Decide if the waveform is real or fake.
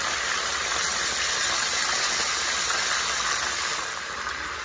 real